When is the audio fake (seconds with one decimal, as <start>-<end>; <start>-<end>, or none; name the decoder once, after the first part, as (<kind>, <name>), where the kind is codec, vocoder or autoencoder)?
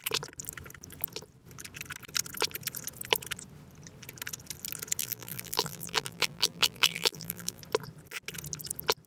5.0-7.6 (vocoder, BigVGAN v2)